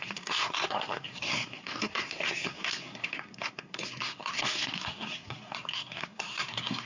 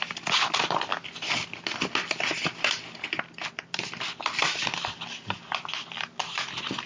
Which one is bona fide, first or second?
second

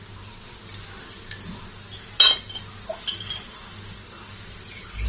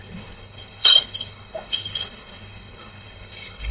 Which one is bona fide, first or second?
first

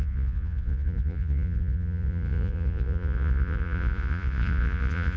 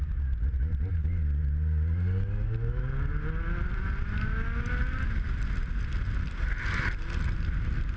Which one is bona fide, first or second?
second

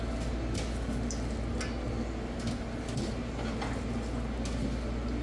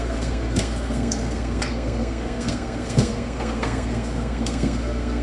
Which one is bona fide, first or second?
first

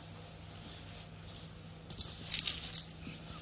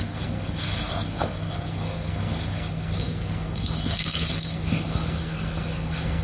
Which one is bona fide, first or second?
first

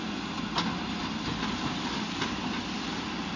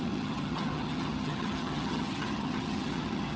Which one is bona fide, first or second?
first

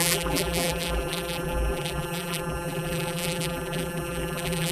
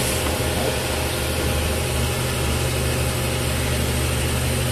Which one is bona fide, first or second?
second